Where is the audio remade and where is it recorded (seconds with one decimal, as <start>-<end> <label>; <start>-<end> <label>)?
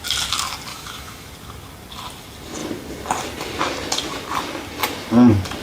0.0-0.7 recorded; 0.7-1.3 remade; 1.3-5.6 recorded